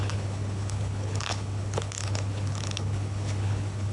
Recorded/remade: remade